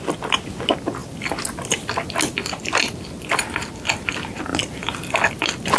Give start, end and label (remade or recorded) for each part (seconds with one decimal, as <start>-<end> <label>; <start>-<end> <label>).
0.0-1.0 recorded; 1.0-3.7 remade; 3.7-4.5 recorded; 4.5-5.8 remade